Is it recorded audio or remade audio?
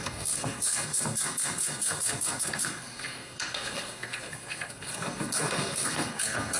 remade